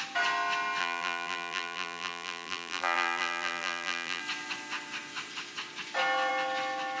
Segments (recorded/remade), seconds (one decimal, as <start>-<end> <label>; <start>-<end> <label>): 0.0-0.8 recorded; 0.8-4.2 remade; 4.2-7.0 recorded